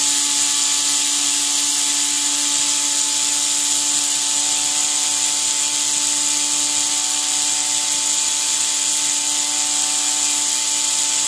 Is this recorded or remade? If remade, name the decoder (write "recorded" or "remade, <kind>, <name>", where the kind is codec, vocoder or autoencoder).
recorded